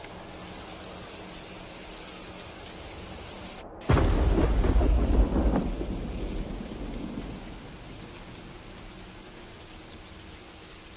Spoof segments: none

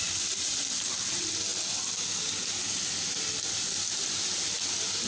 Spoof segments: none